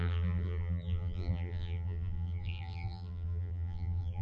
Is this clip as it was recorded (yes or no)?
no